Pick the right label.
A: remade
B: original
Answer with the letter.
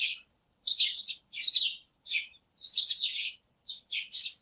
A